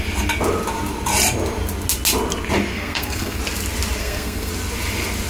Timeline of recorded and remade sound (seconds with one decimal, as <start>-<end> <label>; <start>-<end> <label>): 0.0-2.7 recorded; 2.7-3.4 remade; 3.4-4.0 recorded; 4.0-4.5 remade; 4.5-5.3 recorded

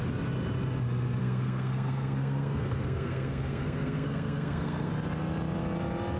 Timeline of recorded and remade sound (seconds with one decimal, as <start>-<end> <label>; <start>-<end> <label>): 0.0-1.2 recorded; 1.2-4.9 remade; 4.9-6.2 recorded

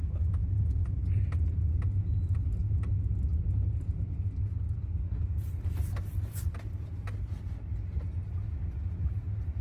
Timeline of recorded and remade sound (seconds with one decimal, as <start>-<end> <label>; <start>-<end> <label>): 0.0-9.6 recorded

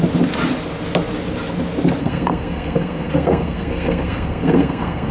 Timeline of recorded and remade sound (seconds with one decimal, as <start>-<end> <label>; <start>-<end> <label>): 0.0-2.0 recorded; 2.0-5.1 remade

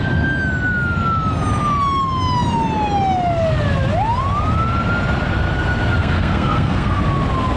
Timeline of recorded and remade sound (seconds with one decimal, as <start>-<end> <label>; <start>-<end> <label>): 0.0-6.0 recorded; 6.0-7.0 remade; 7.0-7.6 recorded

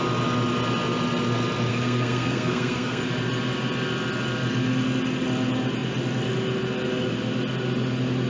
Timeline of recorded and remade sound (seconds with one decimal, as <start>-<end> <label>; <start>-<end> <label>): 0.0-1.7 recorded; 1.7-3.0 remade; 3.0-8.3 recorded

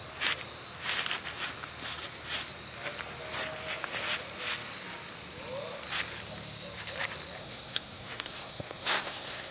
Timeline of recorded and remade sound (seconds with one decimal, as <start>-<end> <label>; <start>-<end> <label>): 0.0-7.4 recorded; 7.4-9.5 remade

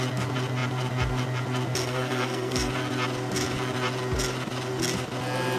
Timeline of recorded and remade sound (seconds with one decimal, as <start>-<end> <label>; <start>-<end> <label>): 0.0-1.8 recorded; 1.8-2.7 remade; 2.7-5.6 recorded